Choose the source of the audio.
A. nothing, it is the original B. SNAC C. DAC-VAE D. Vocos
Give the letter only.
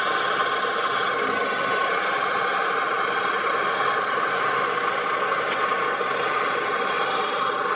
A